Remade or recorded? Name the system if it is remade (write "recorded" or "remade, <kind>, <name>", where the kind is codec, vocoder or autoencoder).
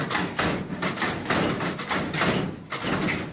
recorded